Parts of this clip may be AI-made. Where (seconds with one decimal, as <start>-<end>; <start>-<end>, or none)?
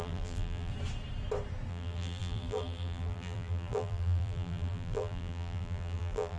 0.0-0.7; 1.7-6.4